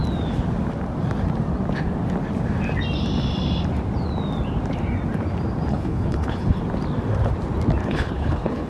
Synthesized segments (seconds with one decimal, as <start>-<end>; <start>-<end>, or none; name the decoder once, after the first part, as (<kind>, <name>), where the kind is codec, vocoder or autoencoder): 5.7-6.6 (codec, HILCodec); 7.8-8.7